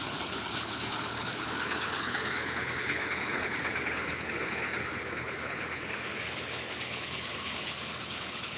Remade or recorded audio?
remade